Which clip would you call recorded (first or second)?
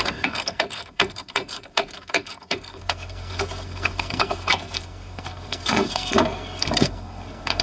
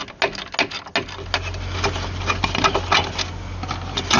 second